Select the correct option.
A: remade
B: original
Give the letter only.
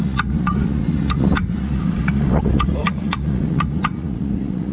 A